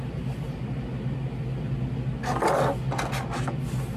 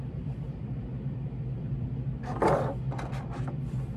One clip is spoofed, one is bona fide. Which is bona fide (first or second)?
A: first